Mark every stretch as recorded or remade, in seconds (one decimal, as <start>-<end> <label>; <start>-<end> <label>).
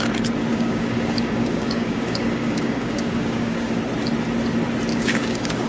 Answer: 0.0-0.5 recorded; 0.5-3.8 remade; 3.8-4.9 recorded; 4.9-5.7 remade